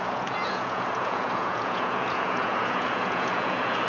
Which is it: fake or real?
fake